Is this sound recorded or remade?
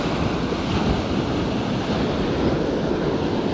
recorded